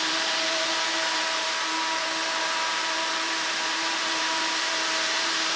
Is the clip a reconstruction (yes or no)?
yes